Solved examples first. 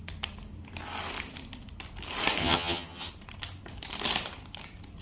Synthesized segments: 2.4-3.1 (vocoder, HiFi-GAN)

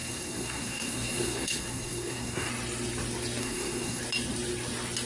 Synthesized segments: 0.0-2.5 (codec, SNAC); 3.4-4.0

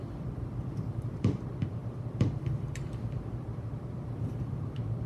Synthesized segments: 0.0-5.1 (vocoder, BigVGAN v2)